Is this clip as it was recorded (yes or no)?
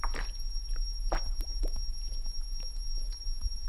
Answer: yes